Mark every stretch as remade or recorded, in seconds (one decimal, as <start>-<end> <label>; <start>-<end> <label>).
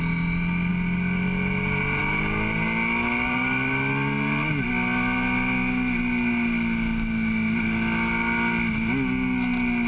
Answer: 0.0-9.9 recorded